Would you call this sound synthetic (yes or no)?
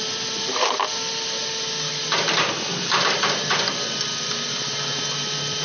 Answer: no